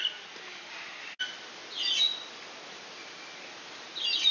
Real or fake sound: real